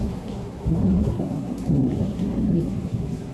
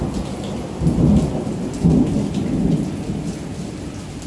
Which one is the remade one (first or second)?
first